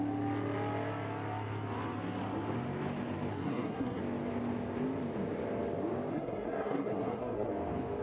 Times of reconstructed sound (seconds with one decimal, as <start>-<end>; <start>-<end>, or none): 3.3-4.0; 6.1-7.5